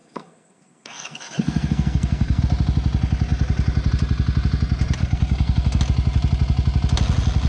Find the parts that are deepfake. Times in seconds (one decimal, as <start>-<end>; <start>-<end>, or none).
0.0-2.4; 5.0-5.8